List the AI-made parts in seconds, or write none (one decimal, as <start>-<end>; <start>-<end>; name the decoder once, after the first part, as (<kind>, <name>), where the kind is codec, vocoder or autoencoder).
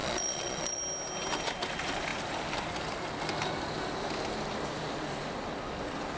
0.0-0.8 (vocoder, Vocos)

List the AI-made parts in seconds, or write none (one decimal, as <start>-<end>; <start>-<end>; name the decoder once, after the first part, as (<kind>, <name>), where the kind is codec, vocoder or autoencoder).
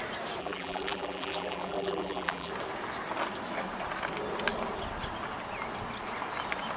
0.4-2.5 (vocoder, BigVGAN v2)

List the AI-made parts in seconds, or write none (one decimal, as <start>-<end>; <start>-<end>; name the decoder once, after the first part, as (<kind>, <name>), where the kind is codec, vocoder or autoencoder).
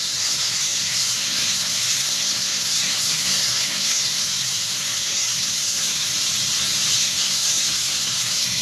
0.0-6.1 (codec, SNAC); 6.9-8.6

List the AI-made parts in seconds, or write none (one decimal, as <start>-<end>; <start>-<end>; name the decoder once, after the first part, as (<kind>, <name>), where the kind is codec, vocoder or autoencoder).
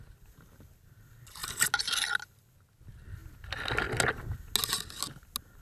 none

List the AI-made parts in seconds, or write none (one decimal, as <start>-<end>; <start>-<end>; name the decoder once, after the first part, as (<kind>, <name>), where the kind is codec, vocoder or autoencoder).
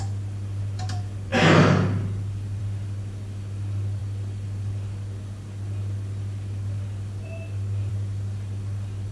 none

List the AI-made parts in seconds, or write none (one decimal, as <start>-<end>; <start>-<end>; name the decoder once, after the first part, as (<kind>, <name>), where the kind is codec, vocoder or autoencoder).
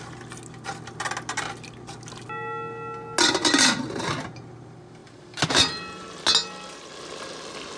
none